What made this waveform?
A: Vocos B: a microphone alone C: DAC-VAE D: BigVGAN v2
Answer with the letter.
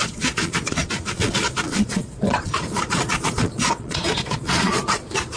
A